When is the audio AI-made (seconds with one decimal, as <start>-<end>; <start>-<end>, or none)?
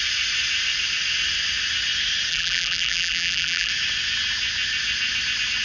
2.3-3.7